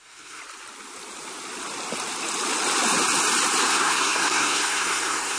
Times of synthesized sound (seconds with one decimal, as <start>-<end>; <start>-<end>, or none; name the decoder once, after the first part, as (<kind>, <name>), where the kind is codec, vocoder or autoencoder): 0.0-0.4 (codec, SNAC); 3.6-5.4